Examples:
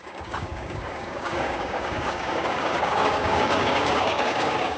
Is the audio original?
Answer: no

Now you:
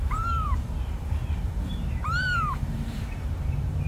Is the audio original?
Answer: no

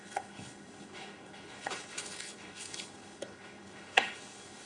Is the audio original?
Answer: no